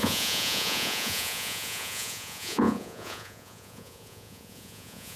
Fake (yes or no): yes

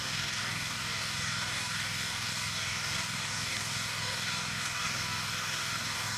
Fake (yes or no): yes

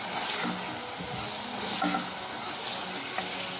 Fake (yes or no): no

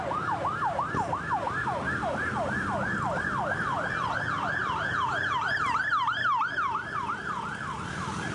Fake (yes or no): no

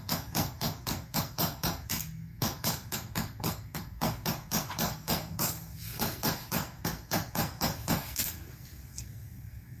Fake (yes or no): yes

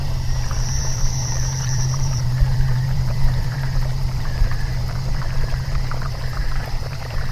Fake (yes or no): yes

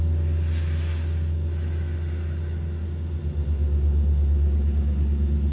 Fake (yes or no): no